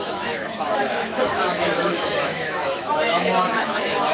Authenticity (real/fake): fake